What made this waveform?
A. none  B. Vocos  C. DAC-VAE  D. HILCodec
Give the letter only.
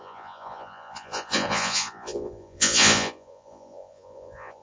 B